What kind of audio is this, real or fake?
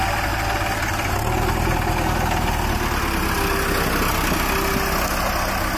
real